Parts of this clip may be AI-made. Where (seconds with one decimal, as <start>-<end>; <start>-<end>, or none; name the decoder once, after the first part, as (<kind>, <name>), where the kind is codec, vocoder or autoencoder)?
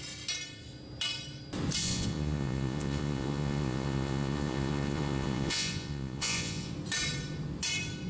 1.8-6.7 (vocoder, Vocos)